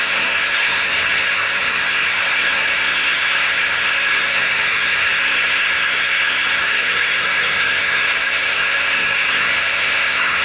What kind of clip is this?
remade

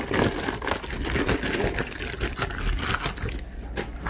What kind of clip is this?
recorded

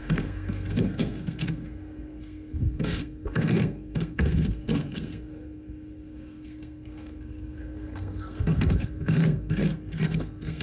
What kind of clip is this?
remade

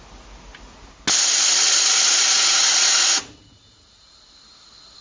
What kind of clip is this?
recorded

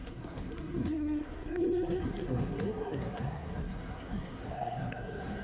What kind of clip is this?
remade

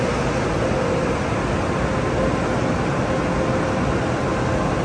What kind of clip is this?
recorded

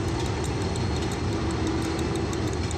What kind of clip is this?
recorded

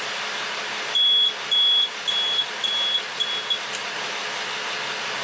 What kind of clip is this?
recorded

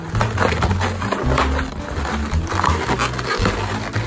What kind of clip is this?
recorded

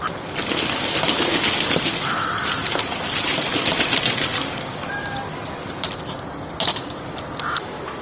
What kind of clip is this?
recorded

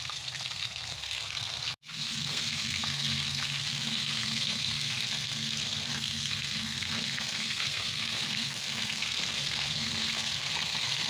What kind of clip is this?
remade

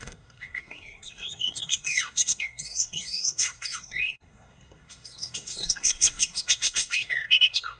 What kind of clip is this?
remade